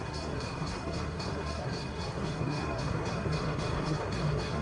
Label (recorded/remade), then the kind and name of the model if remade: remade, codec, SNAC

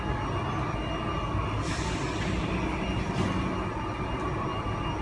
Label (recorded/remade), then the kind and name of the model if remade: recorded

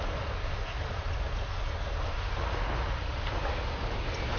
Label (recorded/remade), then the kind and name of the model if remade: recorded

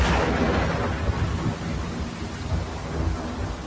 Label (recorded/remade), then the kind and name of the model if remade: recorded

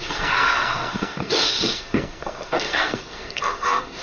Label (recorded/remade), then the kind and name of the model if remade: remade, codec, SNAC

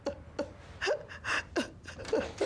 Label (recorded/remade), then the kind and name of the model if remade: recorded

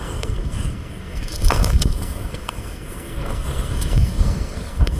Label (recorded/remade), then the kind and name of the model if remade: remade, codec, SNAC